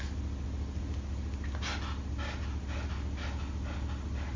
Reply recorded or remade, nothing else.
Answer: recorded